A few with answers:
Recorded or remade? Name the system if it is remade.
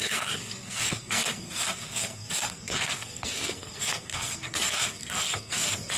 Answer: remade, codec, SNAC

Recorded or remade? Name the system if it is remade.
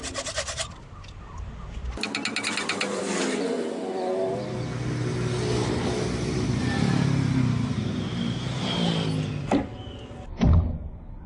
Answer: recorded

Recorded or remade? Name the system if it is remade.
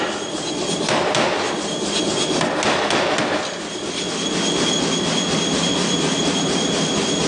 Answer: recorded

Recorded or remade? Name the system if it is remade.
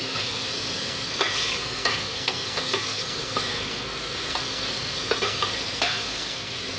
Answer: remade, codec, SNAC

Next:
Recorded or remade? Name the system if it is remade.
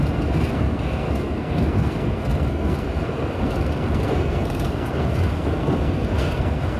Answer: remade, codec, SNAC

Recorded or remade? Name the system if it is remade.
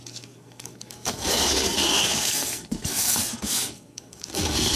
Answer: remade, codec, SNAC